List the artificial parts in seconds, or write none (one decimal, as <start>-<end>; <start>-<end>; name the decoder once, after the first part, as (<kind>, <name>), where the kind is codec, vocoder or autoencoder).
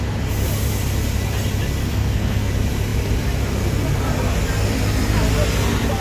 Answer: 1.8-2.5 (codec, SNAC)